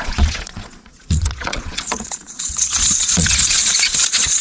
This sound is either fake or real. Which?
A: fake